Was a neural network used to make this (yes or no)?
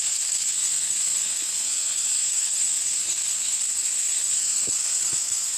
yes